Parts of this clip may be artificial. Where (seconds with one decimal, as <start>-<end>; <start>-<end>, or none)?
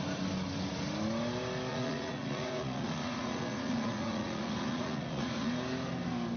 1.7-5.5